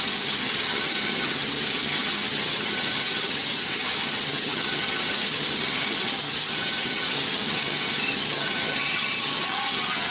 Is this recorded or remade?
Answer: remade